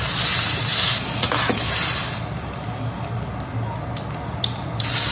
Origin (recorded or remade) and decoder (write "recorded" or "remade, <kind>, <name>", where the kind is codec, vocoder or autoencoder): recorded